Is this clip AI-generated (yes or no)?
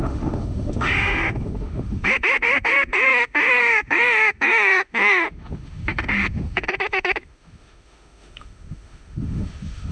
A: yes